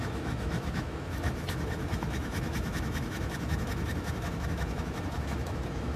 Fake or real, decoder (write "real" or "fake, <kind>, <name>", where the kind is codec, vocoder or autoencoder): fake, autoencoder, DAC-VAE